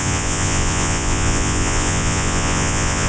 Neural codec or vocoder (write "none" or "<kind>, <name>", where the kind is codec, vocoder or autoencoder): vocoder, Vocos